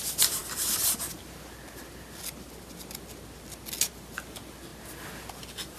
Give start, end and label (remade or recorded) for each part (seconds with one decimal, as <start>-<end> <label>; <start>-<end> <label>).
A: 0.0-5.8 recorded